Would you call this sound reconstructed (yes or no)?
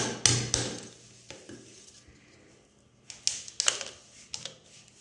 no